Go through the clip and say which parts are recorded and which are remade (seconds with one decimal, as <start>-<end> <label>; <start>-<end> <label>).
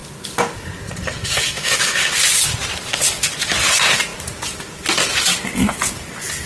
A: 0.0-1.2 recorded; 1.2-2.1 remade; 2.1-6.5 recorded